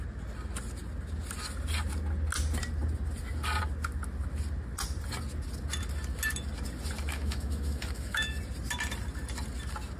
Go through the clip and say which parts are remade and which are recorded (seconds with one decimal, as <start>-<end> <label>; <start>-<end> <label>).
0.0-7.1 recorded; 7.1-8.4 remade; 8.4-10.0 recorded